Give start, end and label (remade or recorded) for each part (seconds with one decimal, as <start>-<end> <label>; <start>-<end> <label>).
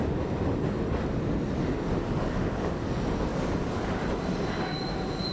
0.0-2.0 recorded; 2.0-2.9 remade; 2.9-3.3 recorded; 3.3-4.0 remade; 4.0-5.3 recorded